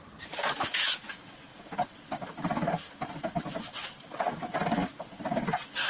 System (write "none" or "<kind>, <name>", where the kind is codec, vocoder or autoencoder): none